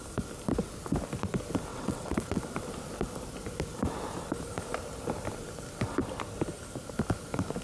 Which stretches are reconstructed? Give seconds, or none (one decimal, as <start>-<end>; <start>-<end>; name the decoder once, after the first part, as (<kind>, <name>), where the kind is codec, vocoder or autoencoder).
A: 1.7-2.4 (vocoder, WaveNeXt)